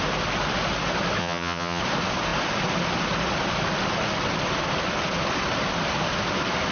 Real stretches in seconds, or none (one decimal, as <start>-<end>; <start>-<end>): 0.0-1.2; 1.8-6.7